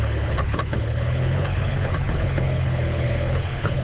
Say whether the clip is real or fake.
fake